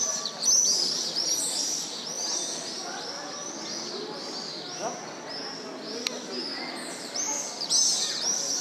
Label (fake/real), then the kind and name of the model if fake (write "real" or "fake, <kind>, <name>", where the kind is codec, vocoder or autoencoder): real